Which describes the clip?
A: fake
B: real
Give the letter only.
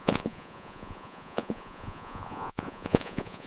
A